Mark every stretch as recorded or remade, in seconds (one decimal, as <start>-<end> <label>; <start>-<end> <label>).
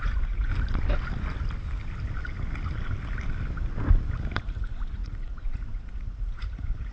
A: 0.0-0.5 remade; 0.5-4.4 recorded; 4.4-6.9 remade